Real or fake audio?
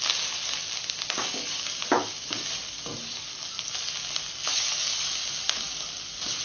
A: real